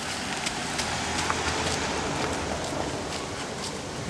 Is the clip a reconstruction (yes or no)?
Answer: no